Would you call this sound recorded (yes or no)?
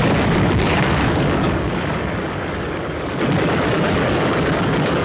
no